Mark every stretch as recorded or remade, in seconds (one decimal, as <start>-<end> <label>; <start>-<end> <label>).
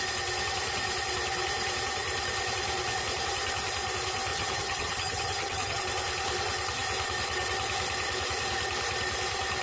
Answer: 0.0-4.3 recorded; 4.3-5.8 remade; 5.8-9.6 recorded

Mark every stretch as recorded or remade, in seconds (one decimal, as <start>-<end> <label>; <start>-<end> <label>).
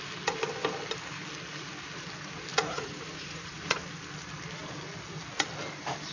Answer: 0.0-2.5 recorded; 2.5-3.8 remade; 3.8-6.1 recorded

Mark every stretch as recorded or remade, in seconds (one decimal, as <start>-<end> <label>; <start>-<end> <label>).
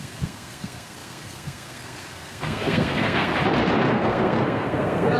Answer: 0.0-3.3 remade; 3.3-3.9 recorded; 3.9-5.2 remade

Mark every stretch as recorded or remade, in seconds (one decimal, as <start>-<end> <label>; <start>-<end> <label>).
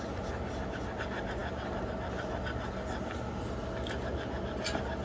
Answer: 0.0-5.0 recorded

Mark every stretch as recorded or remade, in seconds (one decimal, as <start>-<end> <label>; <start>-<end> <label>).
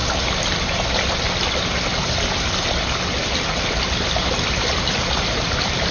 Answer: 0.0-5.9 recorded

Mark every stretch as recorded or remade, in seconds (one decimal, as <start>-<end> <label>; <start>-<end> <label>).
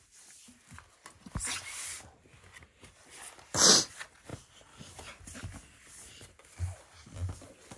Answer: 0.0-7.8 recorded